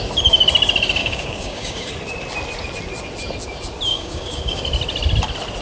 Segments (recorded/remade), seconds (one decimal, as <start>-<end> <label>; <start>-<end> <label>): 0.0-1.0 recorded; 1.0-1.9 remade; 1.9-3.9 recorded; 3.9-4.6 remade; 4.6-5.6 recorded